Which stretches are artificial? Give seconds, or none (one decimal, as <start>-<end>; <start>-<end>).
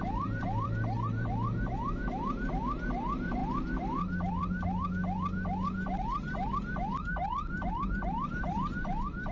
0.0-3.4; 4.0-4.4; 7.7-9.3